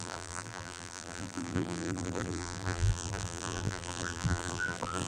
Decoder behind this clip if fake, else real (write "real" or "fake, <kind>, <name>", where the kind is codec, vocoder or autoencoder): fake, vocoder, BigVGAN v2